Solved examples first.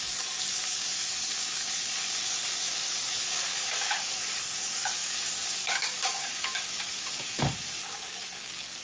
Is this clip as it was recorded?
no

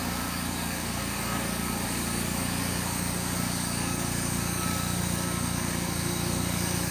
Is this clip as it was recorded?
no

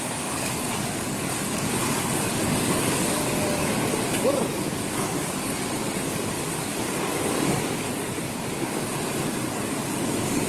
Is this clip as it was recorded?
no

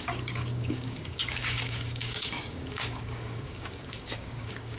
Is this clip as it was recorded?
no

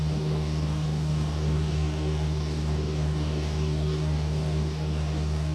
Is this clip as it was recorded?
no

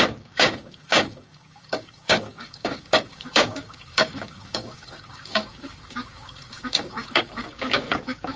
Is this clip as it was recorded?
no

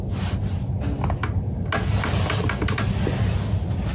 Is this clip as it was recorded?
yes